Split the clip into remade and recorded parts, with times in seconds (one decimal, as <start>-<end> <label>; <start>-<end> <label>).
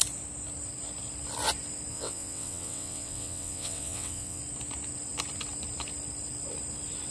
0.0-1.9 recorded; 1.9-4.4 remade; 4.4-7.1 recorded